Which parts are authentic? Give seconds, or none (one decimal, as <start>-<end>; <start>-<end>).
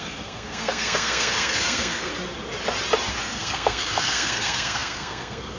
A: 2.1-3.1